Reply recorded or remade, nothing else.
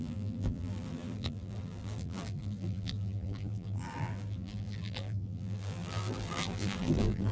remade